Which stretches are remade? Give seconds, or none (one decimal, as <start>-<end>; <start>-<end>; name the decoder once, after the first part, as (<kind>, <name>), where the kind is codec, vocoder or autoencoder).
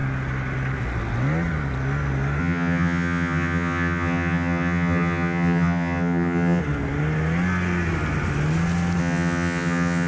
2.4-6.6 (vocoder, HiFi-GAN); 9.0-10.1